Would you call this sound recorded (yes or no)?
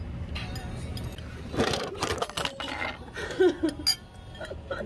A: yes